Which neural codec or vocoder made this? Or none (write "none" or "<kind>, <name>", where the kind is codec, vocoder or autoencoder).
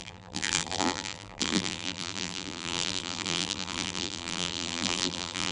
vocoder, BigVGAN v2